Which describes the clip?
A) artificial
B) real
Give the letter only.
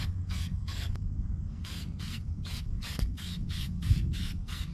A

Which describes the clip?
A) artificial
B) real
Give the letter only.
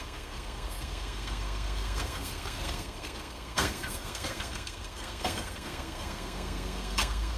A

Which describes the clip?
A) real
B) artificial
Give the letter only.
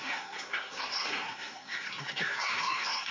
B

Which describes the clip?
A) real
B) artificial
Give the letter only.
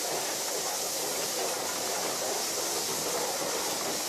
A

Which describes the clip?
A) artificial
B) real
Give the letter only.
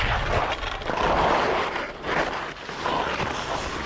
B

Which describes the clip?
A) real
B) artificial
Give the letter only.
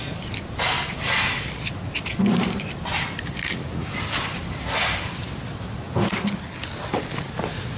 A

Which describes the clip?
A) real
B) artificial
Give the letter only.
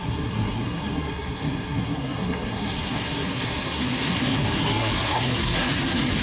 B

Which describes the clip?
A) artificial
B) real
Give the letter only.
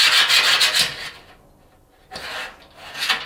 B